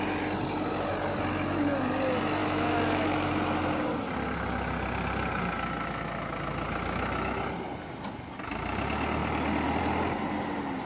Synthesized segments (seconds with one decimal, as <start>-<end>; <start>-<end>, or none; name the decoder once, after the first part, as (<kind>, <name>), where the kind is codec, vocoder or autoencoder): 2.4-3.3 (autoencoder, DAC-VAE)